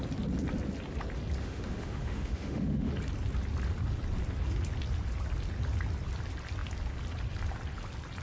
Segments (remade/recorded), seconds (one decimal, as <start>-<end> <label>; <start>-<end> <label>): 0.0-1.4 recorded; 1.4-2.9 remade; 2.9-8.2 recorded